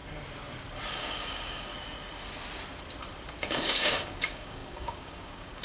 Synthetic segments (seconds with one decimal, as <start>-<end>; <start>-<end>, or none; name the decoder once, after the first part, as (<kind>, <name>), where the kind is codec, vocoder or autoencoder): 0.9-1.7 (codec, DAC); 3.5-5.6